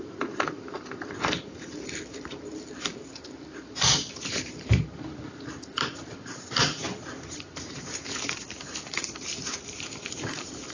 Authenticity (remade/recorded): remade